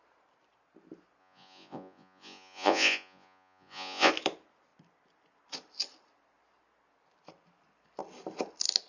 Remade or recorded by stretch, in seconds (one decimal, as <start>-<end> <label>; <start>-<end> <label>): 0.0-1.2 recorded; 1.2-4.1 remade; 4.1-8.9 recorded